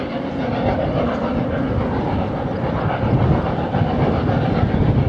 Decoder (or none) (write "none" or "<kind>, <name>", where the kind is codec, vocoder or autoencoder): none